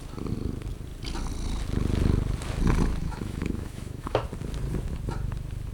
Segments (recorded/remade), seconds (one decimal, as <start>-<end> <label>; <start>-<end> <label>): 0.0-3.0 recorded; 3.0-4.2 remade; 4.2-5.7 recorded